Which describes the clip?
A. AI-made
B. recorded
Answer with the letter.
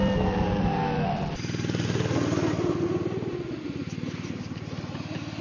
B